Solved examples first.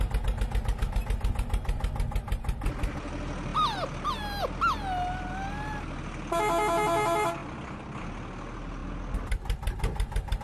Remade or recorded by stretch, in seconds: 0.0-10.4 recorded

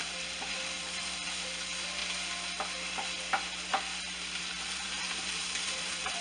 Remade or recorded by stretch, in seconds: 0.0-2.0 remade; 2.0-4.4 recorded; 4.4-6.2 remade

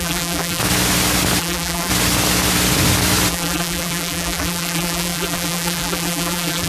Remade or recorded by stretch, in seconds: 0.0-0.6 remade; 0.6-1.4 recorded; 1.4-1.9 remade; 1.9-3.3 recorded; 3.3-6.7 remade

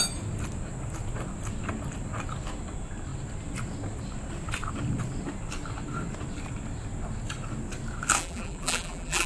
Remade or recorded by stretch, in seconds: 0.0-8.2 recorded; 8.2-9.3 remade

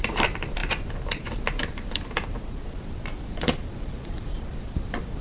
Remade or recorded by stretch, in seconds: 0.0-5.2 remade

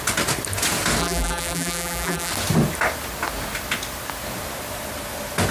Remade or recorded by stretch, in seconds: 0.0-1.0 recorded; 1.0-2.3 remade; 2.3-5.5 recorded

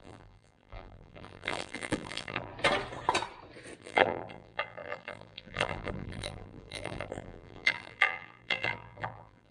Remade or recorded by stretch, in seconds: 0.0-2.5 remade; 2.5-3.8 recorded; 3.8-9.5 remade

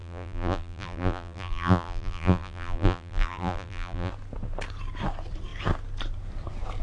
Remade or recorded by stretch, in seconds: 0.0-4.1 remade; 4.1-6.8 recorded